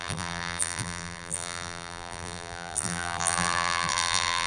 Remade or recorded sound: remade